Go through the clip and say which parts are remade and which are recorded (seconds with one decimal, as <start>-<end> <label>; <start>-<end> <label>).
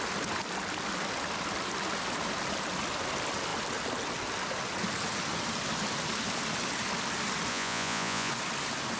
0.0-7.5 recorded; 7.5-8.3 remade; 8.3-9.0 recorded